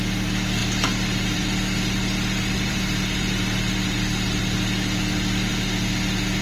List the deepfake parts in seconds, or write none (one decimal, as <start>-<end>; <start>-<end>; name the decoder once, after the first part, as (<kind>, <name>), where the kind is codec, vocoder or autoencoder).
0.6-4.4 (vocoder, BigVGAN v2)